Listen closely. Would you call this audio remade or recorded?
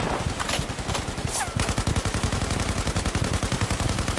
recorded